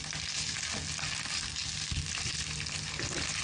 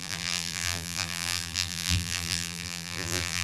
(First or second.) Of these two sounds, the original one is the first